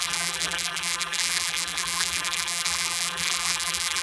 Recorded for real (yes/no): no